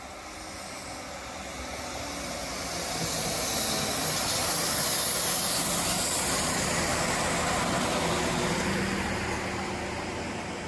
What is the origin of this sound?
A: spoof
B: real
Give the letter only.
B